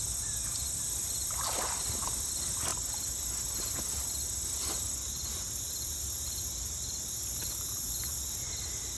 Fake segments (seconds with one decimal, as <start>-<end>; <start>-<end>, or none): none